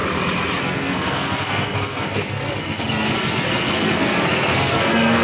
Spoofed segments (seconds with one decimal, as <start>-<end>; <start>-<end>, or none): 0.6-5.2

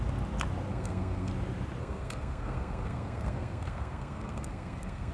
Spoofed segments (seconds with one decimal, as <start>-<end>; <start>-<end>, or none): 0.7-1.3; 1.8-5.1

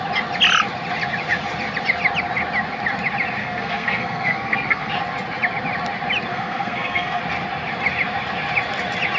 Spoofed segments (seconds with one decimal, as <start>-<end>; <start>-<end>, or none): 3.4-4.9; 6.3-7.2

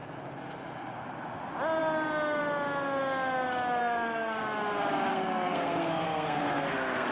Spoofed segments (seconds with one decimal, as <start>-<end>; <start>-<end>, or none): 3.8-4.4; 5.1-7.1

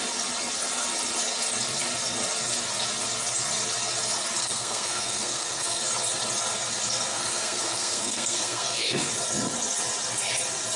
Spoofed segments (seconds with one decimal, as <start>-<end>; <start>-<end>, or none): 4.4-5.8; 7.1-9.1

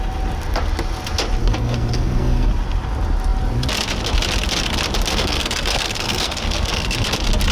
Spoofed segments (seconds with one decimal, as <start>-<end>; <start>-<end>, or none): 1.4-2.5; 5.1-7.1

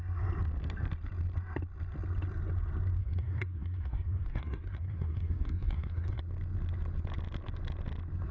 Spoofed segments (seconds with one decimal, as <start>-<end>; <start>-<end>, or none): 3.0-6.2

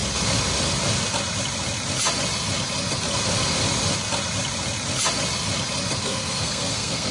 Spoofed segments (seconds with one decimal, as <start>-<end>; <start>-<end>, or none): 6.0-7.1